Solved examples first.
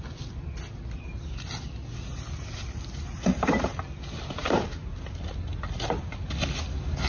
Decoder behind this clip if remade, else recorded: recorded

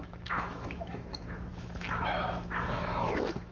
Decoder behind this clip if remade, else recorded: remade, autoencoder, DAC-VAE